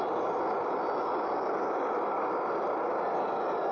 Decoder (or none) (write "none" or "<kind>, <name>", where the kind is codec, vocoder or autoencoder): none